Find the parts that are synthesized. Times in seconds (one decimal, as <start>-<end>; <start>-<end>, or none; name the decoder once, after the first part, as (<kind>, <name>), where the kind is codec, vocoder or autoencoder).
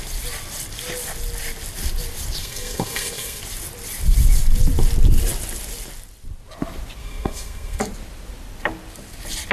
2.4-3.4 (codec, SNAC); 7.0-7.8